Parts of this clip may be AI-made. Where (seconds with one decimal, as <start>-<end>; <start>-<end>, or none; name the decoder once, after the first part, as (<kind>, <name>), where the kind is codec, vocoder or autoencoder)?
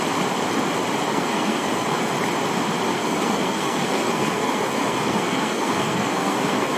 1.1-2.0 (codec, SNAC); 2.9-6.8